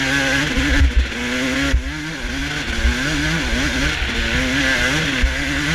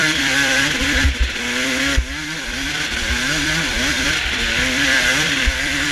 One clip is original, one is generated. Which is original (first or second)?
first